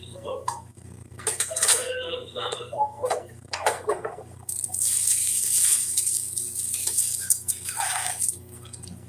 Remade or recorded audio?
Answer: remade